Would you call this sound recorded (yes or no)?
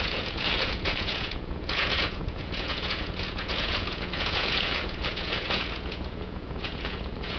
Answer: no